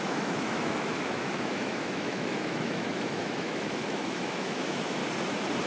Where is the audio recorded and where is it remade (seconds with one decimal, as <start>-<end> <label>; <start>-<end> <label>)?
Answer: 0.0-5.0 remade; 5.0-5.7 recorded